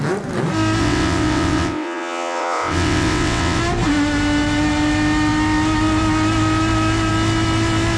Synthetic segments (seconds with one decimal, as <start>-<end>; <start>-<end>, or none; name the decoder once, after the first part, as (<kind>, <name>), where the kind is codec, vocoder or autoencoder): 0.8-3.6 (vocoder, WaveNeXt)